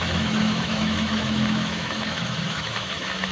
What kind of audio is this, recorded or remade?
remade